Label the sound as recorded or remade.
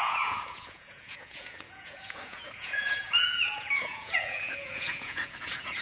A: remade